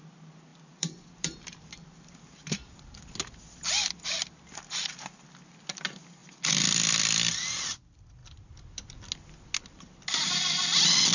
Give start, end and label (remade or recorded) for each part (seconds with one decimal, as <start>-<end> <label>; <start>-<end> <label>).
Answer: 0.0-0.5 recorded; 0.5-4.4 remade; 4.4-6.2 recorded; 6.2-7.0 remade; 7.0-11.1 recorded